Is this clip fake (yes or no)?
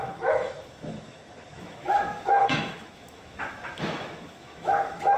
yes